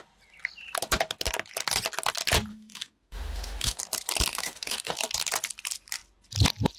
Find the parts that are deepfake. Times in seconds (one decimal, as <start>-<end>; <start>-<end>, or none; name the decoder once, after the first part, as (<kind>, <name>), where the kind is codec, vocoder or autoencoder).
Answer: 2.5-3.8 (autoencoder, DAC-VAE); 4.3-5.0